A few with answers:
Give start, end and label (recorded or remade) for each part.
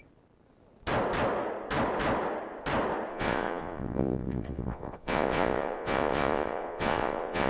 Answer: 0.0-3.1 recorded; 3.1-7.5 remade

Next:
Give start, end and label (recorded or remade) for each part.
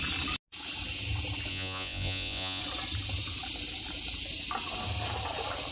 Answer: 0.0-1.5 recorded; 1.5-2.6 remade; 2.6-5.7 recorded